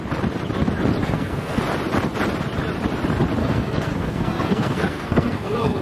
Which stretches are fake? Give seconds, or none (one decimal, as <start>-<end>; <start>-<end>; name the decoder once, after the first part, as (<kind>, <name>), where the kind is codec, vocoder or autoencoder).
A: 1.0-1.6 (codec, SNAC); 3.4-5.8